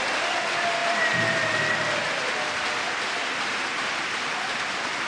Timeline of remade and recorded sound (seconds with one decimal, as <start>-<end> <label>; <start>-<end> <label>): 0.0-0.8 recorded; 0.8-1.4 remade; 1.4-3.2 recorded; 3.2-4.0 remade; 4.0-5.1 recorded